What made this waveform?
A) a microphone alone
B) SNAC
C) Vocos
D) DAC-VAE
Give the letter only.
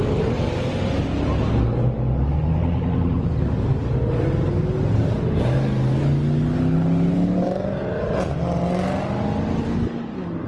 A